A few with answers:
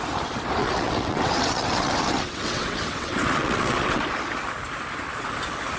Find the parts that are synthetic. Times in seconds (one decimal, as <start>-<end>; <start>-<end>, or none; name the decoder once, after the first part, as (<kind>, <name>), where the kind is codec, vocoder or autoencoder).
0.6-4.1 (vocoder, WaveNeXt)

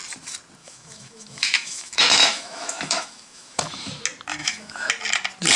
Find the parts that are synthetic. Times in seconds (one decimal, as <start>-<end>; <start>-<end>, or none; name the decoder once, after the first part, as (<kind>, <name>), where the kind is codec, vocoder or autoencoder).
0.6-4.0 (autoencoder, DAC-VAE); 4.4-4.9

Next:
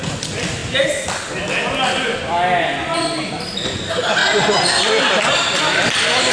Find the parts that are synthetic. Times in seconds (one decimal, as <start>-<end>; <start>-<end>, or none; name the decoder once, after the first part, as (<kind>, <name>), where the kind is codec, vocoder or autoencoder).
4.2-6.3 (vocoder, BigVGAN v2)